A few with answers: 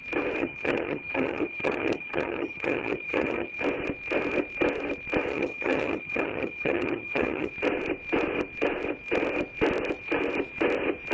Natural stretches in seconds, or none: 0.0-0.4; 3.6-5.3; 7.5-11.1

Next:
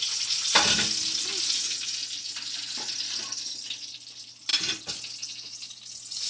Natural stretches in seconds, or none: 0.0-6.3

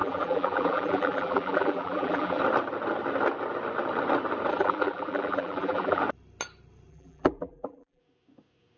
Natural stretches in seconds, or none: 2.4-4.5; 6.0-6.9; 8.0-8.8

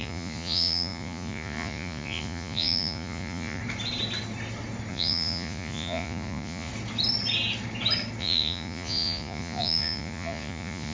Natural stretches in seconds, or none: 3.6-4.9; 6.7-8.2

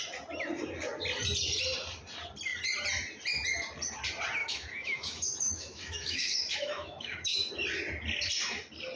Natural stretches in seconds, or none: 0.0-4.4; 7.5-9.0

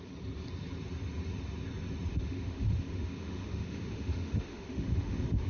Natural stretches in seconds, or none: 0.0-2.1

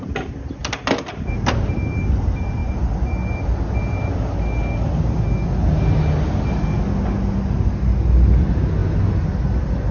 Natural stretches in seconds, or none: 0.0-9.9